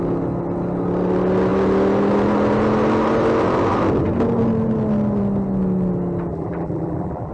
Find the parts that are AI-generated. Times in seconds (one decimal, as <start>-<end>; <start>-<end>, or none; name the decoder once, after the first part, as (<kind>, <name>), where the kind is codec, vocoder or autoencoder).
6.3-7.3 (vocoder, BigVGAN v2)